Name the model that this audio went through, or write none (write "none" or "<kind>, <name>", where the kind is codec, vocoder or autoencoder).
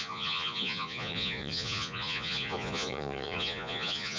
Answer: vocoder, Vocos